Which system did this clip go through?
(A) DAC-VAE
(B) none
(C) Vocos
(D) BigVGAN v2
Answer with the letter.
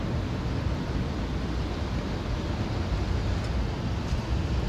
B